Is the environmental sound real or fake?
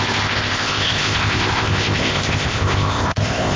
fake